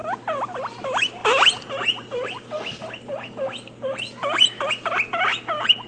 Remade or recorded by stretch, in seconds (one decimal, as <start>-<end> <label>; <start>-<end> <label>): 0.0-5.9 recorded